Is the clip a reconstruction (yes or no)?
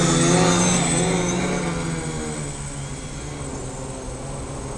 no